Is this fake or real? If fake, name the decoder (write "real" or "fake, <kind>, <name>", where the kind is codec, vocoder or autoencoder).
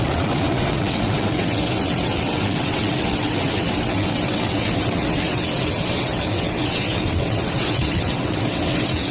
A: fake, vocoder, WaveNeXt